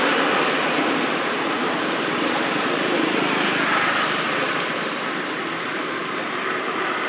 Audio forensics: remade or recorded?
remade